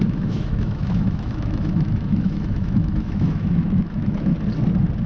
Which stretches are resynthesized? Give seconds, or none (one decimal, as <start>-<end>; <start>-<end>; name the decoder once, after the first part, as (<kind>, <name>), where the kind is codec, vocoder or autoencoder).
0.0-4.3 (autoencoder, DAC-VAE)